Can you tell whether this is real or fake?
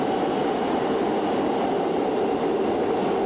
real